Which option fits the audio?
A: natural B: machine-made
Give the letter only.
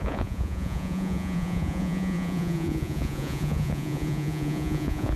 B